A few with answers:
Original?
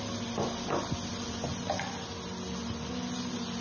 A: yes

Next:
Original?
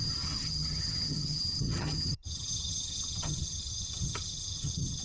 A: no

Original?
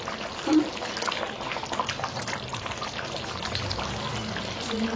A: yes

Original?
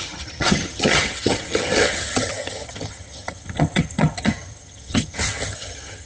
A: no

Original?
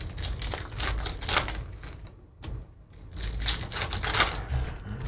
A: yes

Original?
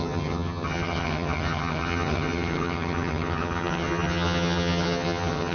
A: no